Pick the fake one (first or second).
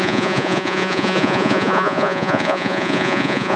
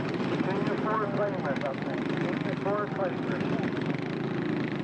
first